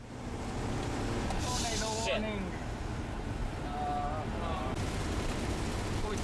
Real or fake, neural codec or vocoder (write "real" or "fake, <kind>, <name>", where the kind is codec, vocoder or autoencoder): real